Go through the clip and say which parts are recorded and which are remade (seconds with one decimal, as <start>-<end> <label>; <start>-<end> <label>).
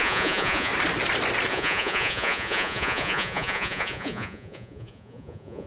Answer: 0.0-0.7 remade; 0.7-1.5 recorded; 1.5-5.7 remade